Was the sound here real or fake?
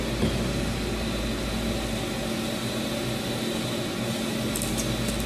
real